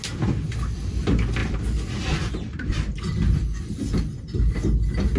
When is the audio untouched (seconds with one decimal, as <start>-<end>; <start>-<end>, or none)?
0.0-5.2